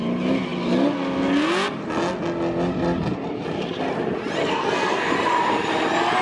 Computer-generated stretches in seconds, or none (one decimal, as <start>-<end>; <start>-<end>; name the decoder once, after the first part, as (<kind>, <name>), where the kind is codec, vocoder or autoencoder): 4.4-5.1 (codec, SNAC)